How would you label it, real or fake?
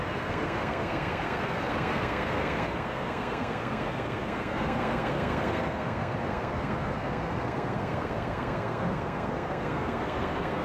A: fake